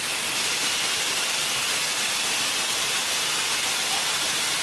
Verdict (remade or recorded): recorded